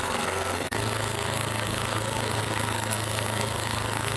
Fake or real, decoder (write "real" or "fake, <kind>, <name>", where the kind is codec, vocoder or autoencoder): fake, codec, SNAC